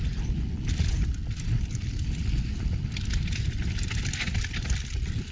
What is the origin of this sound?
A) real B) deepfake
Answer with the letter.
A